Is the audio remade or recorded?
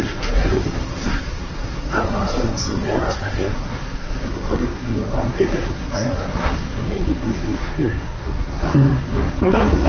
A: remade